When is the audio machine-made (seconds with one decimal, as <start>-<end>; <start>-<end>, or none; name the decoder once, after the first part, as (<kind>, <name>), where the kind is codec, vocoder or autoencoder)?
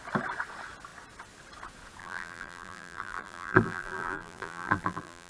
2.0-5.3 (vocoder, BigVGAN v2)